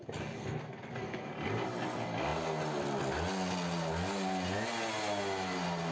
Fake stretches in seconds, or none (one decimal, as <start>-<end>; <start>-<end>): 0.4-1.3